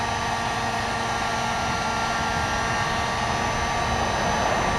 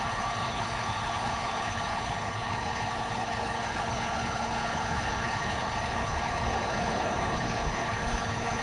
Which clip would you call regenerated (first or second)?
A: second